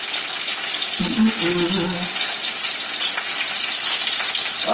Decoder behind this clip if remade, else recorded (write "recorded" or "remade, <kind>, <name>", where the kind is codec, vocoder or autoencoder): recorded